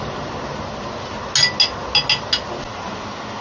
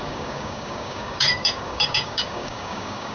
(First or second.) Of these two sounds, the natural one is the first